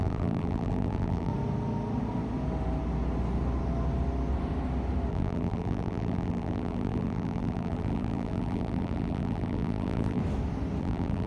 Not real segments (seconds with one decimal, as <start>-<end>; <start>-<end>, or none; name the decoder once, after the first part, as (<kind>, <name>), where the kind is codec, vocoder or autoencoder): 0.0-1.3 (vocoder, BigVGAN v2); 5.1-10.2; 10.8-11.3